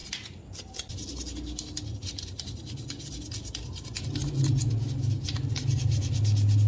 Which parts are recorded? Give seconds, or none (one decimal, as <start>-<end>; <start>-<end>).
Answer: 0.0-6.7